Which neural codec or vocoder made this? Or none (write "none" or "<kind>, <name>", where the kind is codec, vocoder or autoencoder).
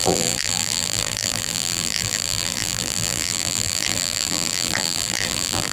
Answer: vocoder, BigVGAN v2